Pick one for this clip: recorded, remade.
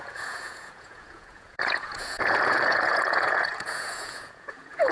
remade